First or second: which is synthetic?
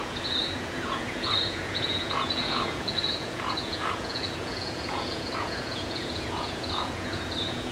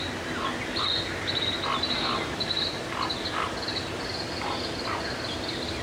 first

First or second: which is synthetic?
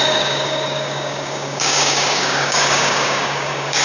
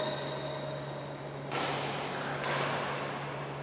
first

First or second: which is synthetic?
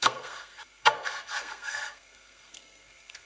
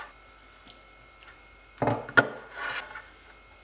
first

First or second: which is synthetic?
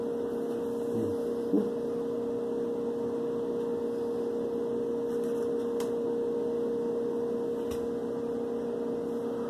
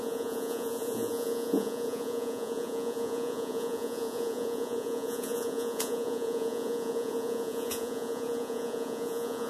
second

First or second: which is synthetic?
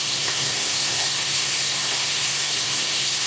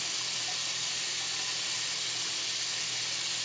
first